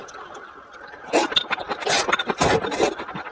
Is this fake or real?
real